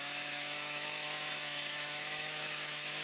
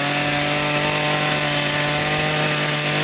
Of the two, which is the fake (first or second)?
first